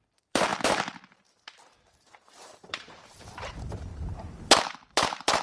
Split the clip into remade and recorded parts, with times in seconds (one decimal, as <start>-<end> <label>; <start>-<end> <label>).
0.0-5.4 remade